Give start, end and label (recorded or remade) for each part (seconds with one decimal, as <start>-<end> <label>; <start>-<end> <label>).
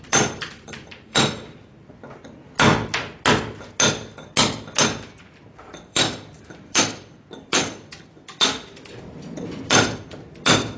0.0-1.4 remade; 1.4-5.2 recorded; 5.2-10.8 remade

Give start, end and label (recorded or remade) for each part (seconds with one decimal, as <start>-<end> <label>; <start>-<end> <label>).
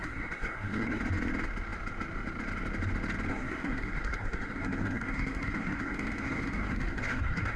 0.0-1.0 remade; 1.0-3.3 recorded; 3.3-7.6 remade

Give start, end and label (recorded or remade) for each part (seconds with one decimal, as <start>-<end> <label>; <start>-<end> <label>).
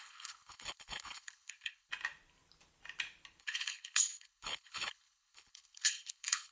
0.0-1.9 remade; 1.9-3.4 recorded; 3.4-6.5 remade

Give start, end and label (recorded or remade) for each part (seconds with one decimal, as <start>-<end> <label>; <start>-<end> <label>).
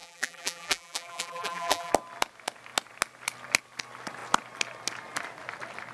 0.0-1.9 remade; 1.9-5.9 recorded